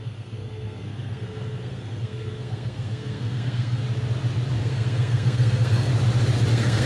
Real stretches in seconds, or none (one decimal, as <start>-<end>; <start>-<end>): 3.8-4.6; 5.9-6.5